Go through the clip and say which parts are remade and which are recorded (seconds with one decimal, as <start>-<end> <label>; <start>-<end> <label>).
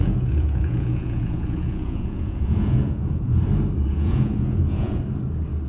0.0-3.4 remade; 3.4-3.9 recorded; 3.9-5.0 remade; 5.0-5.7 recorded